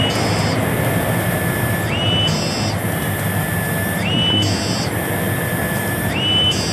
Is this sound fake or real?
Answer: real